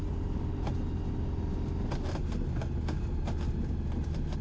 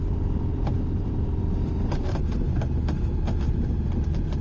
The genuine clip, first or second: first